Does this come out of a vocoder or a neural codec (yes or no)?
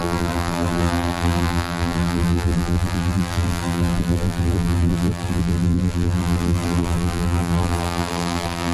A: yes